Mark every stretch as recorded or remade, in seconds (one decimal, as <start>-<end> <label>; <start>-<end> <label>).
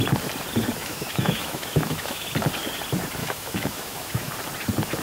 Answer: 0.0-0.8 recorded; 0.8-2.3 remade; 2.3-3.2 recorded; 3.2-4.3 remade; 4.3-5.0 recorded